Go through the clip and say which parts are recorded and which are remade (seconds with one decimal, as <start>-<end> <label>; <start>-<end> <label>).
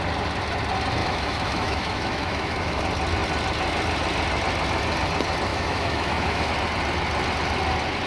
0.0-1.0 recorded; 1.0-2.8 remade; 2.8-5.5 recorded; 5.5-6.5 remade; 6.5-8.1 recorded